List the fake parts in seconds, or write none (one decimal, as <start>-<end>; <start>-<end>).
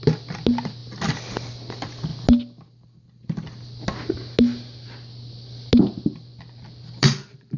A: 0.8-1.7; 6.3-7.6